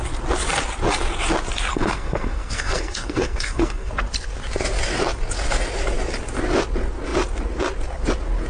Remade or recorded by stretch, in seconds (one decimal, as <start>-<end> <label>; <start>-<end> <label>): 0.0-1.7 recorded; 1.7-3.9 remade; 3.9-8.5 recorded